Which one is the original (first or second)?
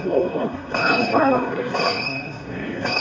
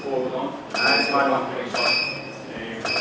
second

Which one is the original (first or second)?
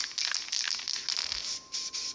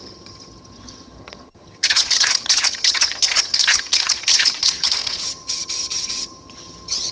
first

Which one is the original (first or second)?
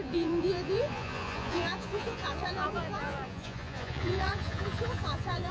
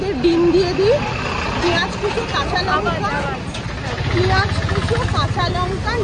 second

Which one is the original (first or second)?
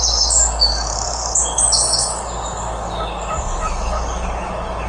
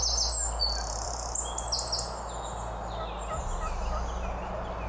second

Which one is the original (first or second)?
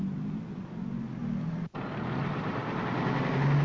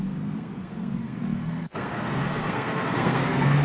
first